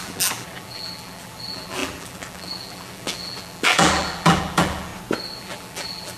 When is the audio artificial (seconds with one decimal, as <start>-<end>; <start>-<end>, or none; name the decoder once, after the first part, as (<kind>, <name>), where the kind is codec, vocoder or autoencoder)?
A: 0.0-4.9 (vocoder, BigVGAN v2); 5.4-6.2